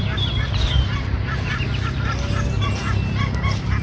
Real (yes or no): yes